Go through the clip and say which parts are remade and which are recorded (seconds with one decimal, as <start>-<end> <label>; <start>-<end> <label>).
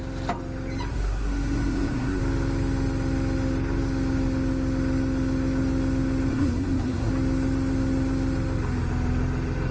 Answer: 0.0-0.9 recorded; 0.9-2.2 remade; 2.2-6.3 recorded; 6.3-7.1 remade; 7.1-9.7 recorded